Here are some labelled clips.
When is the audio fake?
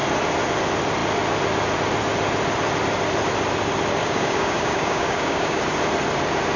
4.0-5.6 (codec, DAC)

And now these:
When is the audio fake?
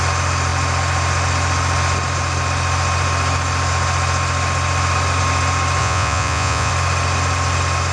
5.8-6.7 (vocoder, Vocos)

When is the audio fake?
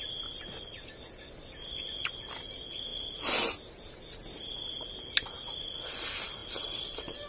none